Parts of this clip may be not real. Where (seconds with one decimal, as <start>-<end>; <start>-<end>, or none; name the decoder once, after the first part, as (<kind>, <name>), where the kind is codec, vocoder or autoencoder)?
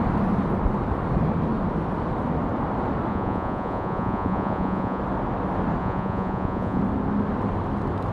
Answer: 3.1-5.0 (vocoder, Vocos); 5.8-6.8